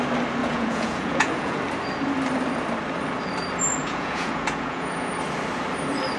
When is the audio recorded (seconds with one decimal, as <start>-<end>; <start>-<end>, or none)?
0.0-0.4; 1.6-3.8; 5.1-6.2